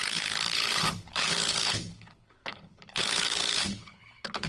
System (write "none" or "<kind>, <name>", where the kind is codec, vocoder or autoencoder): codec, HILCodec